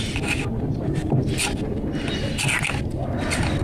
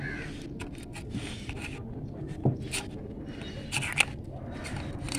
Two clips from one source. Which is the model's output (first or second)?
first